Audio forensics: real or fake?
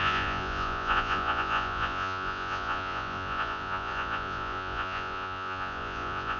fake